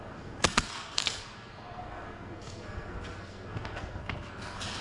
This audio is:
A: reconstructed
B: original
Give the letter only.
A